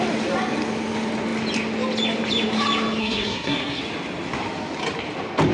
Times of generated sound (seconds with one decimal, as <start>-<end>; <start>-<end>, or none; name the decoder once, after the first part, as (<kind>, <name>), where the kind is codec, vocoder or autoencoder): 3.0-3.8 (codec, SNAC)